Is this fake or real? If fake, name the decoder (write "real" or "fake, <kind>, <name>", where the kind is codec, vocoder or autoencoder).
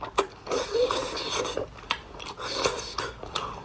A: real